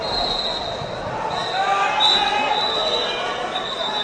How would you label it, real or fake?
real